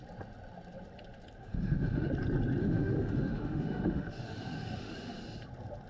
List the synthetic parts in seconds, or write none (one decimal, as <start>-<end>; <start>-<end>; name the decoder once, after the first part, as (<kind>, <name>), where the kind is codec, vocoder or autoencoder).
1.4-2.1 (autoencoder, DAC-VAE); 2.6-5.2